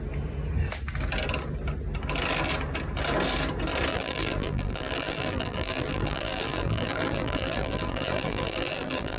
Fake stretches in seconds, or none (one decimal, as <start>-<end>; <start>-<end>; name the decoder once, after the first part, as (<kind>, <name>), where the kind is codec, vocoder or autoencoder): 3.9-9.2 (vocoder, BigVGAN v2)